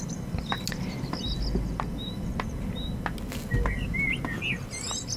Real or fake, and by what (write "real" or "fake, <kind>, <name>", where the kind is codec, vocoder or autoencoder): real